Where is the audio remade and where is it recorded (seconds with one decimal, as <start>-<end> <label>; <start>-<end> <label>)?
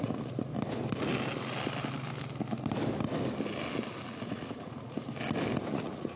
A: 0.0-0.5 remade; 0.5-4.2 recorded; 4.2-5.0 remade; 5.0-5.7 recorded; 5.7-6.2 remade